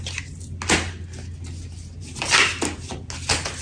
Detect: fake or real real